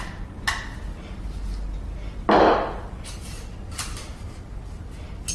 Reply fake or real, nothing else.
real